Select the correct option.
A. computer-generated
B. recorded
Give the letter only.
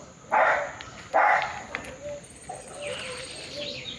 A